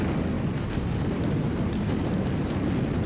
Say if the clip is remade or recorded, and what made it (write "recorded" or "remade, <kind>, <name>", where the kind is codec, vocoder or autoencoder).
recorded